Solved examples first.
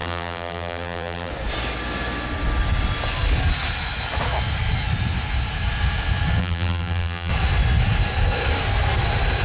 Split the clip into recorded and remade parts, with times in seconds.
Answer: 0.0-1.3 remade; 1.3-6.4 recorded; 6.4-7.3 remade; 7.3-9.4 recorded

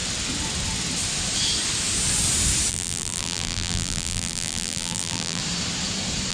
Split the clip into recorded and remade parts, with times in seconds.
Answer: 0.0-2.7 recorded; 2.7-5.4 remade; 5.4-6.3 recorded

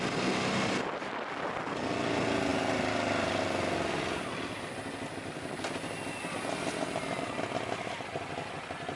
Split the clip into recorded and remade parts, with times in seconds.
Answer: 0.0-9.0 recorded

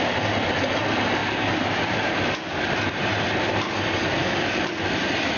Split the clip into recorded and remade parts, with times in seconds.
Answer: 0.0-1.2 recorded; 1.2-2.3 remade; 2.3-4.2 recorded; 4.2-4.7 remade; 4.7-5.4 recorded

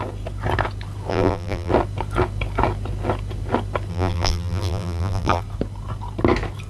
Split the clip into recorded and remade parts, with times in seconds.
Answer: 0.0-1.1 recorded; 1.1-1.7 remade; 1.7-3.9 recorded; 3.9-5.4 remade; 5.4-6.7 recorded

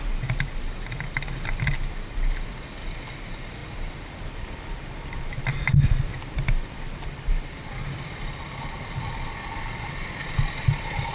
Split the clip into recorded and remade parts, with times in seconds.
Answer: 0.0-3.6 recorded; 3.6-5.2 remade; 5.2-11.1 recorded

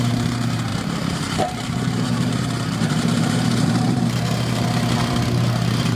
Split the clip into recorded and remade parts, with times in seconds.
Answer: 0.0-6.0 remade

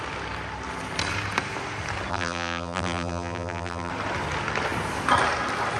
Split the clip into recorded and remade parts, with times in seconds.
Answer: 0.0-2.1 recorded; 2.1-3.9 remade; 3.9-5.8 recorded